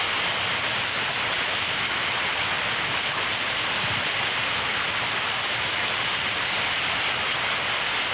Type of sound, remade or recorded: recorded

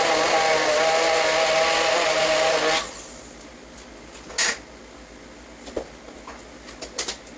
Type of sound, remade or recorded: recorded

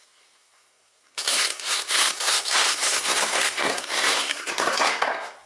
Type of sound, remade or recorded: remade